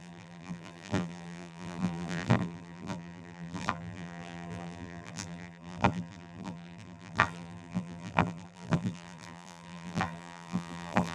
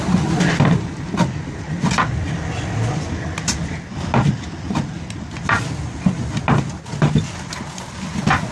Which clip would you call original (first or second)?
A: second